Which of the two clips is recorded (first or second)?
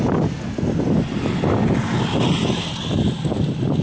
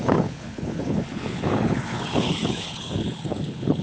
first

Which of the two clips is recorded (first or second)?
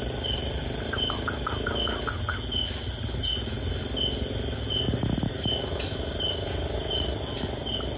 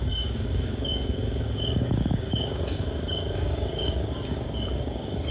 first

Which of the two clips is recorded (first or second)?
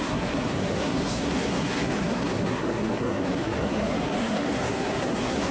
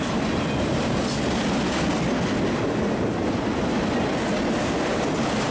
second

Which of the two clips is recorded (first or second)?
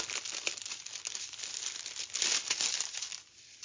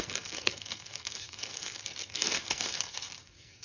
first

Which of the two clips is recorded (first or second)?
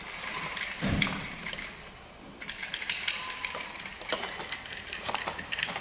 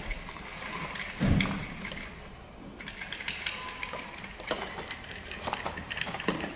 second